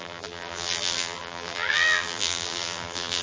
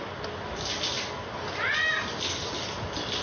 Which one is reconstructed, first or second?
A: first